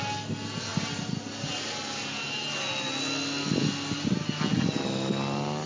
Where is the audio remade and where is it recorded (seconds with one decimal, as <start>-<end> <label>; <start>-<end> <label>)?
0.0-5.7 recorded